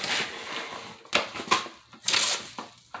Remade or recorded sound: recorded